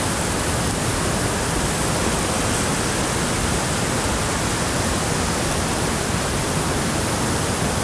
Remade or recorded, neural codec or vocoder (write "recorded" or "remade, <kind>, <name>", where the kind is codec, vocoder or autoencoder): recorded